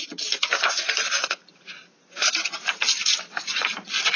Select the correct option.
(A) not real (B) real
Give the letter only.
B